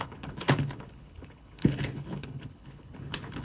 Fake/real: fake